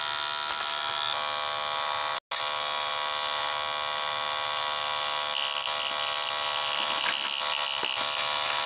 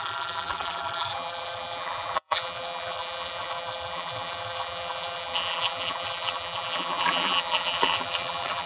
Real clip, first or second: first